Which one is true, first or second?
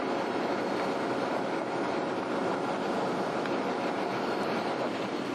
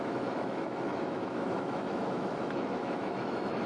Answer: first